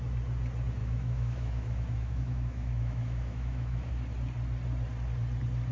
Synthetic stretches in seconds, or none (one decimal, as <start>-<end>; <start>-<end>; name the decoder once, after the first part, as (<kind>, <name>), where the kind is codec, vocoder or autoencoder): 0.8-3.9 (autoencoder, DAC-VAE)